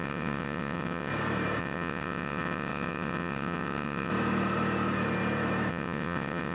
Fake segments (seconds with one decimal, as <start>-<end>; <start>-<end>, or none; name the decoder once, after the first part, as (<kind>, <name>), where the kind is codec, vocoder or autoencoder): 0.0-1.1 (vocoder, WaveNeXt); 1.6-4.1; 5.7-6.5